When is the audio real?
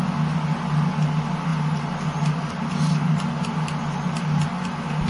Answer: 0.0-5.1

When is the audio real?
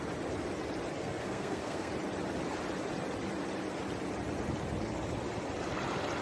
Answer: 0.0-1.0; 1.9-6.2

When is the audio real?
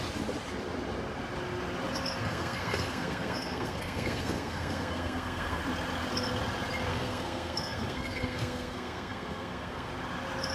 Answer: 0.0-2.2; 5.6-6.9; 9.9-10.5